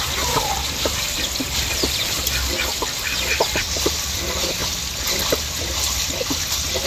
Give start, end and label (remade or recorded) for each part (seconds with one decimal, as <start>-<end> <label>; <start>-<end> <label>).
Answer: 0.0-2.7 remade; 2.7-3.6 recorded; 3.6-4.6 remade; 4.6-5.2 recorded; 5.2-6.9 remade